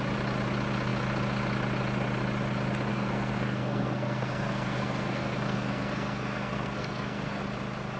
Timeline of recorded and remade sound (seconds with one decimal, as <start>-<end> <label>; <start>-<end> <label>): 0.0-2.9 recorded; 2.9-7.4 remade; 7.4-8.0 recorded